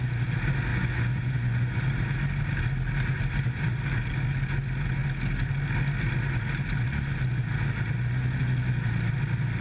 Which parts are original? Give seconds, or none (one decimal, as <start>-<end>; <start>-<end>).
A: 0.0-0.7; 1.8-9.6